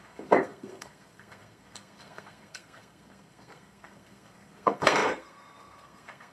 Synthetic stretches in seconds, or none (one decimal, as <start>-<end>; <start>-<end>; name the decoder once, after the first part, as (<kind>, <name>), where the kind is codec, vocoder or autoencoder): 0.0-6.3 (codec, SNAC)